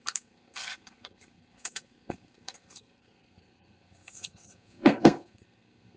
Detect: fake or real fake